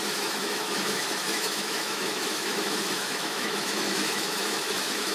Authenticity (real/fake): fake